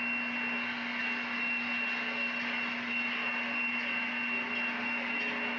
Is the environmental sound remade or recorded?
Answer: recorded